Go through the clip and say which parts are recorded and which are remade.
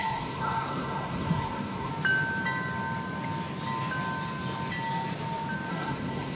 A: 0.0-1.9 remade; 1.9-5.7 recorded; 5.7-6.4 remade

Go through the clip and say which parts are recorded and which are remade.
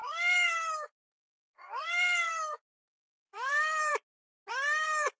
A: 0.0-3.9 remade; 3.9-4.5 recorded; 4.5-5.2 remade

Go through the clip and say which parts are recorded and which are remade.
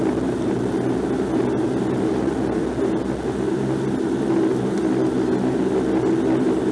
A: 0.0-6.7 recorded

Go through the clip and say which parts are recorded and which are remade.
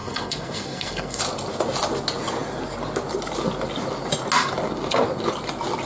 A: 0.0-1.2 remade; 1.2-5.9 recorded